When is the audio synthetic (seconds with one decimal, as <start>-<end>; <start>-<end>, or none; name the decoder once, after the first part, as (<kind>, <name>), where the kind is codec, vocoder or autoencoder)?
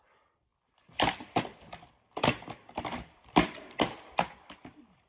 none